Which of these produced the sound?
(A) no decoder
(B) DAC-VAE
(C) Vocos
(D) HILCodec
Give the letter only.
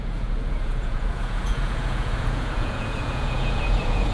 C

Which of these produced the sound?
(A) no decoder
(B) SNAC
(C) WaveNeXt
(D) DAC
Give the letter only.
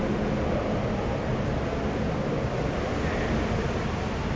A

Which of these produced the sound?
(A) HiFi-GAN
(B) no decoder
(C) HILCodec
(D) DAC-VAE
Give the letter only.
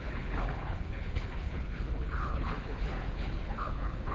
C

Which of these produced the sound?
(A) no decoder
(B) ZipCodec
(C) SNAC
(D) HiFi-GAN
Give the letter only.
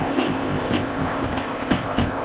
B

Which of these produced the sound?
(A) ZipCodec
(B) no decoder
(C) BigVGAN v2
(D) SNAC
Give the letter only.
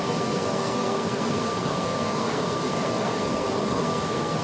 D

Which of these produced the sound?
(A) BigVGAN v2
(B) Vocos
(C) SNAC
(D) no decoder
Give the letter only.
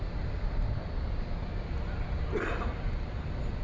D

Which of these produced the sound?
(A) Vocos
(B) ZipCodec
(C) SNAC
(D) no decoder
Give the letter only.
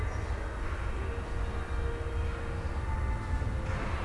D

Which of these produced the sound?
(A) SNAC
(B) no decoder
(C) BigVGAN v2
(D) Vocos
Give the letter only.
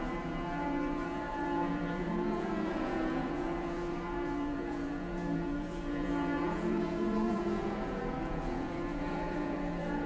D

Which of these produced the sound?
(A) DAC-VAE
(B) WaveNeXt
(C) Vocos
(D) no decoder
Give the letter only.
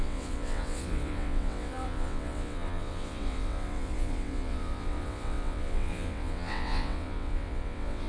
B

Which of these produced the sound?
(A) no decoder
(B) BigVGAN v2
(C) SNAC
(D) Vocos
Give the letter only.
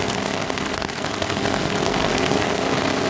C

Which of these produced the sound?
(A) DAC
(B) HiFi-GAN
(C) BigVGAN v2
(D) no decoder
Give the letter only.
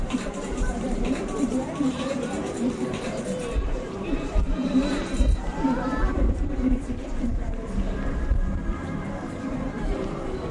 C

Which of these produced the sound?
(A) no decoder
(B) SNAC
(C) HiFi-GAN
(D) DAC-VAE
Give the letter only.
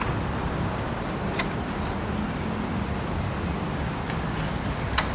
A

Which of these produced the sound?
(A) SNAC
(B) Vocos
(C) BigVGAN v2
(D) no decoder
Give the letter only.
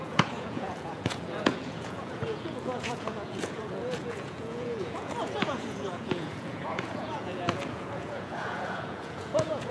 B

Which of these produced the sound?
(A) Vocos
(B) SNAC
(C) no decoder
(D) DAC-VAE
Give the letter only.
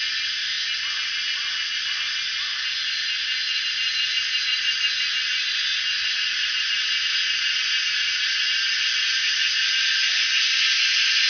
C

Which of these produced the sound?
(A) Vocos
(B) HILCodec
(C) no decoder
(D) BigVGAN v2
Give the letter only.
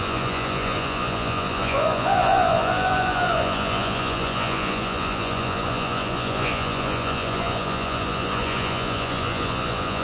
A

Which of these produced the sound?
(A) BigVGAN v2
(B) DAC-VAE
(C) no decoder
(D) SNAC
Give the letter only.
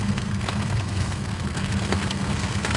D